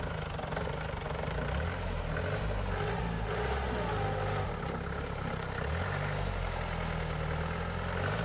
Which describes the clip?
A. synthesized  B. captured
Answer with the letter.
B